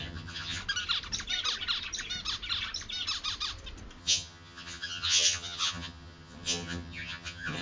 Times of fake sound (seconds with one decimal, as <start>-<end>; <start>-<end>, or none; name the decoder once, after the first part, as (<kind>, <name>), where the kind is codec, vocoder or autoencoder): 0.0-0.6 (vocoder, HiFi-GAN); 4.0-7.6

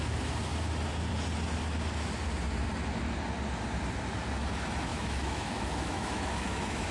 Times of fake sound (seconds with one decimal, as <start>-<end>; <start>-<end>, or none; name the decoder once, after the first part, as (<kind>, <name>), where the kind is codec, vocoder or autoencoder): 4.9-6.9 (autoencoder, DAC-VAE)

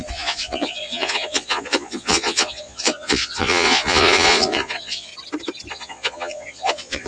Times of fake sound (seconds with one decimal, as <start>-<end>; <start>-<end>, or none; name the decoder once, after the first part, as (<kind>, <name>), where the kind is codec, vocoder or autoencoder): 0.0-5.1 (vocoder, Vocos); 5.7-7.1